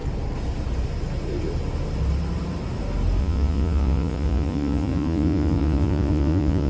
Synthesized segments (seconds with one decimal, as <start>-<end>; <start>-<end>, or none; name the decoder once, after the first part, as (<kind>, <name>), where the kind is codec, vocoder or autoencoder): 3.2-6.7 (vocoder, Vocos)